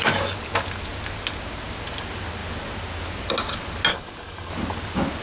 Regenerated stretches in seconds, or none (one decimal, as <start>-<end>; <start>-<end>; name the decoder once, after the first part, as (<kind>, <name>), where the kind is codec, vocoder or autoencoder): 3.9-4.5 (codec, DAC)